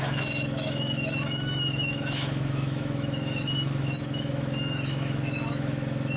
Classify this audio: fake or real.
fake